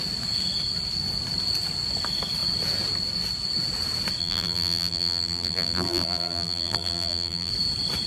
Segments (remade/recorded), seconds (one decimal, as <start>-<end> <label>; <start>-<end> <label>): 0.0-4.2 recorded; 4.2-7.5 remade; 7.5-8.1 recorded